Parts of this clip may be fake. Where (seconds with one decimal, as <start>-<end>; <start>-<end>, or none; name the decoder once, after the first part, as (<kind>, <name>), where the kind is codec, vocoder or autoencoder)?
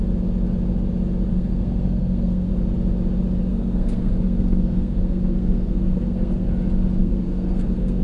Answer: 1.3-2.5 (codec, SNAC); 3.5-6.5; 7.0-8.0